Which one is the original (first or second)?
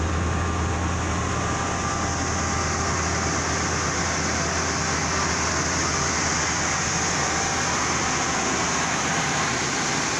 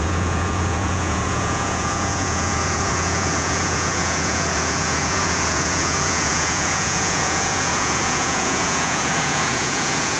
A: first